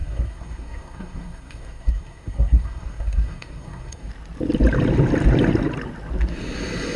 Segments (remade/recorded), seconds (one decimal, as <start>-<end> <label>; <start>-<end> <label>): 0.0-4.1 remade; 4.1-7.0 recorded